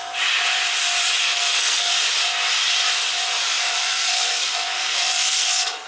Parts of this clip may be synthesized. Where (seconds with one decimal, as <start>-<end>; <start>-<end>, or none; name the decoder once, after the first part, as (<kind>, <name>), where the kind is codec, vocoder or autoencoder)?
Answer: 1.2-1.9 (codec, SNAC); 3.7-5.9